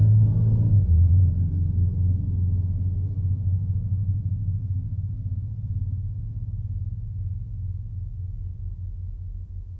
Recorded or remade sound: recorded